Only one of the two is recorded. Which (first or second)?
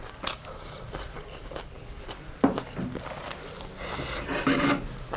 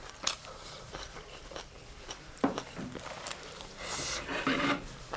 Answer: first